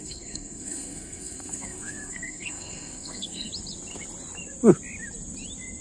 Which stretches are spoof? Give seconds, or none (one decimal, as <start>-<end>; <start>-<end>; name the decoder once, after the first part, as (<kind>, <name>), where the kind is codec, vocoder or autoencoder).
0.0-3.5 (codec, SNAC)